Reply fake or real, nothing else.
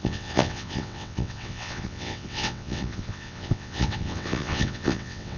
fake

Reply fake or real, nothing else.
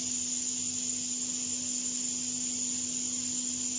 real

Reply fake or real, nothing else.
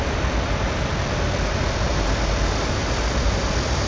real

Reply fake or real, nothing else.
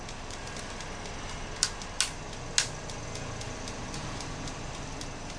real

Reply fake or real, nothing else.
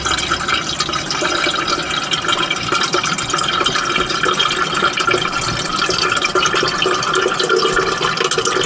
real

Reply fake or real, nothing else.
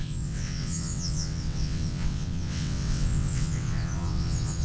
fake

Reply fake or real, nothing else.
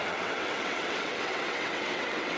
fake